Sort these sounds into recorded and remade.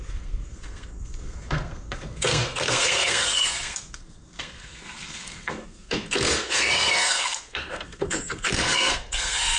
remade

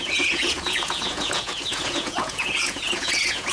remade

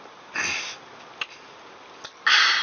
recorded